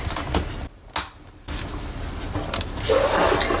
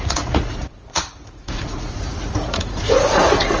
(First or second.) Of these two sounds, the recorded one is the first